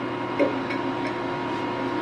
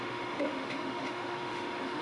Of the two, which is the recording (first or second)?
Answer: first